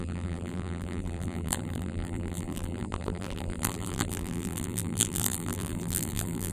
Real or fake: fake